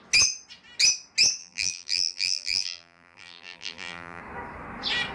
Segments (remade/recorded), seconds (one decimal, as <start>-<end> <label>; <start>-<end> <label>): 0.0-1.4 recorded; 1.4-4.2 remade; 4.2-5.1 recorded